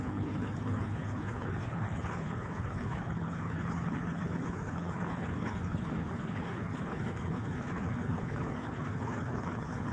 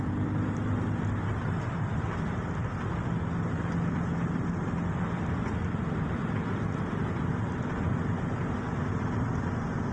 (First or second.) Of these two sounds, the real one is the second